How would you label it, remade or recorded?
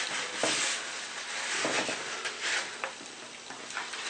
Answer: recorded